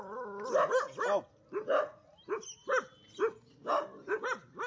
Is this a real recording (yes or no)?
yes